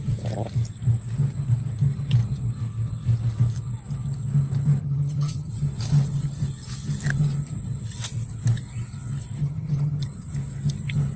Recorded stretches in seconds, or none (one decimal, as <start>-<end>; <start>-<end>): 0.0-4.8; 5.5-9.4; 10.0-11.2